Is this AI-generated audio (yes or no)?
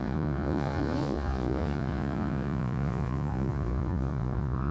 yes